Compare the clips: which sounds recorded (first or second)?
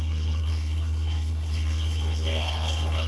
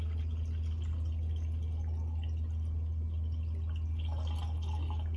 second